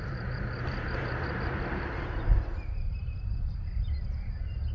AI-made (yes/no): yes